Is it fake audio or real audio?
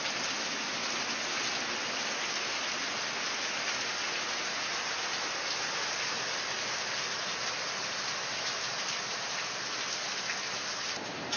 real